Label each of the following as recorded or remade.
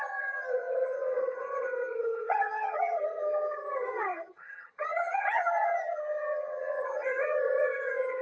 remade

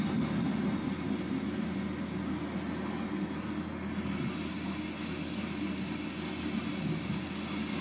recorded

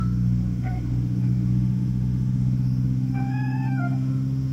remade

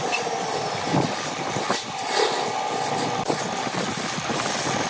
recorded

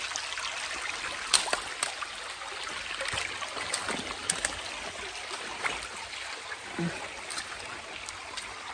recorded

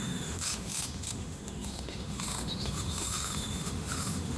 remade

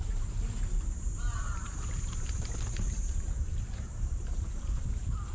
remade